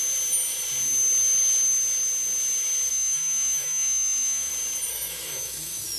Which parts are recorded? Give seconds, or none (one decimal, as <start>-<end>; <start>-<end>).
0.0-2.9; 4.5-4.9